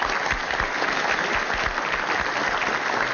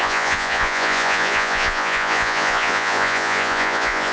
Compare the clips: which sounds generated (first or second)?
second